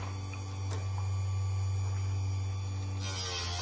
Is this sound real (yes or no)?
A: yes